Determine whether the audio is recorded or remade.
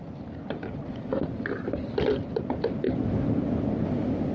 recorded